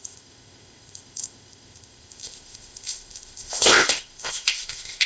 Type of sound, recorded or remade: remade